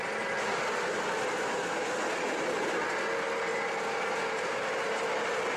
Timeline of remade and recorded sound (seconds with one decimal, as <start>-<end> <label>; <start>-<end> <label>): 0.0-5.6 recorded